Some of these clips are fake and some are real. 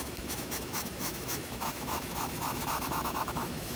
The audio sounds fake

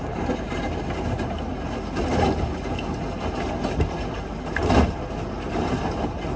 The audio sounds real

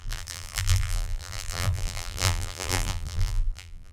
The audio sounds fake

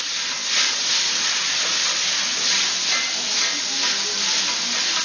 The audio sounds real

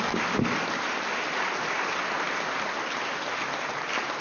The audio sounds real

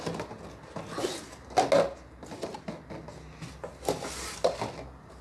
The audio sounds real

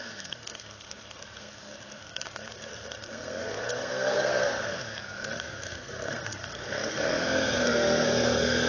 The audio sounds fake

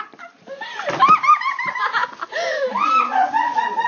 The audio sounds fake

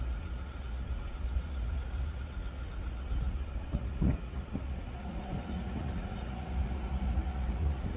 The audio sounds fake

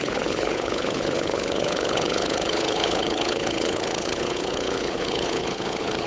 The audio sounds fake